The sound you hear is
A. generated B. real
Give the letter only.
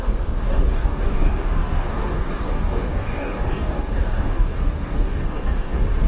A